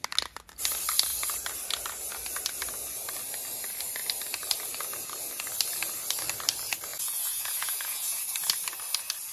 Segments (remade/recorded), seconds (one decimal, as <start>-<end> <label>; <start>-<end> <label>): 0.0-6.9 recorded; 6.9-8.2 remade; 8.2-9.3 recorded